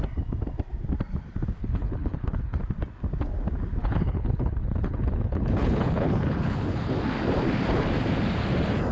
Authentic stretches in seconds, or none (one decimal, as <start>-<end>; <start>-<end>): 0.0-1.6; 2.6-3.8; 6.9-8.9

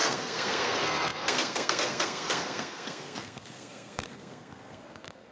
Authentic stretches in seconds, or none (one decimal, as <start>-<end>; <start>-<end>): none

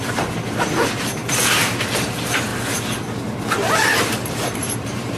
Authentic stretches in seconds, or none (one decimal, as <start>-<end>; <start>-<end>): 1.2-2.0; 2.5-4.3